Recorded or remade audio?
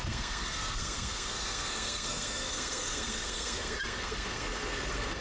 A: remade